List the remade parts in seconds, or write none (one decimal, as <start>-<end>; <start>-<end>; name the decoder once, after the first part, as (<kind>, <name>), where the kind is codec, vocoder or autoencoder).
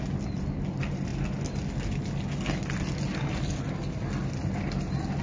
none